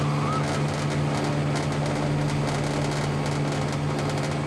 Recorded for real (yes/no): yes